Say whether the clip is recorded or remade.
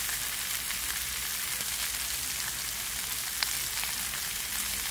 recorded